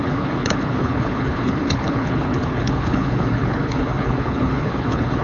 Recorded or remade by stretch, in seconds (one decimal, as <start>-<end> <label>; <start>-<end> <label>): 0.0-5.2 remade